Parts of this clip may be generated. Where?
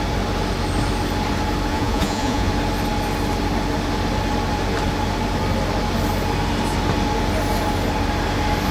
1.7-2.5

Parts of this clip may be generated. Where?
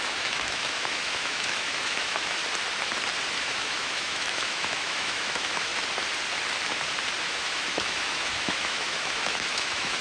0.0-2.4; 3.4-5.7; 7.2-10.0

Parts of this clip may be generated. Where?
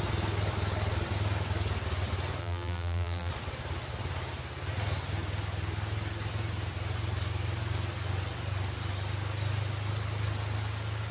2.4-3.3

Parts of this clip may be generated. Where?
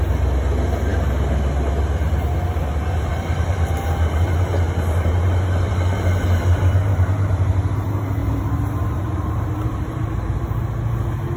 3.1-7.6; 8.2-10.2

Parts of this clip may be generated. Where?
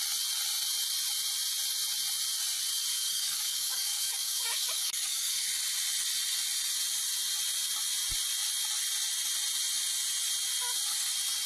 2.9-5.5